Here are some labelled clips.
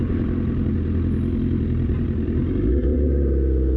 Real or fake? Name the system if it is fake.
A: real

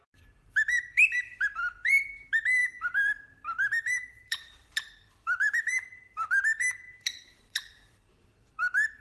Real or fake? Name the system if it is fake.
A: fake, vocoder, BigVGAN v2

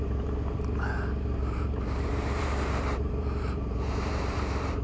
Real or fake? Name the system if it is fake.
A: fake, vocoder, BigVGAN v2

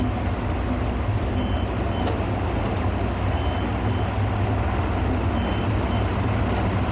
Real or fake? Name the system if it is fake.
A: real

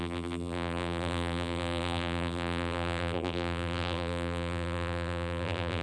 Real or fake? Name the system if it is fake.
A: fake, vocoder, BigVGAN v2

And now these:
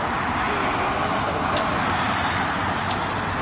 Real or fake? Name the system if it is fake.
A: fake, vocoder, BigVGAN v2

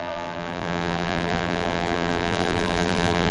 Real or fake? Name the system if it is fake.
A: fake, vocoder, BigVGAN v2